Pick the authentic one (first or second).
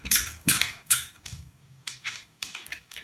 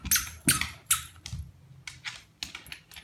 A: second